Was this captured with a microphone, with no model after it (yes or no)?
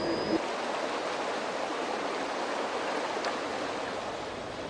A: yes